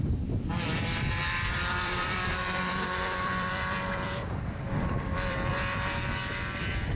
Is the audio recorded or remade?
remade